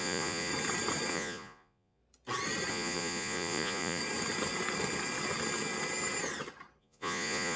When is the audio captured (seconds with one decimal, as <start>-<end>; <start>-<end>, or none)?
0.5-1.1; 2.0-2.7; 4.0-6.8